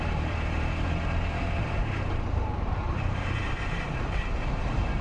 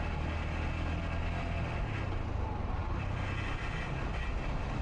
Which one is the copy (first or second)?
first